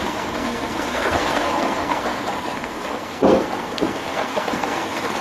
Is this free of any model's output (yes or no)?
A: no